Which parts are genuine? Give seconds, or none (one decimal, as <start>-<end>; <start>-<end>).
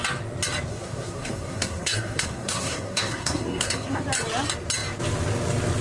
0.0-0.7; 4.0-5.8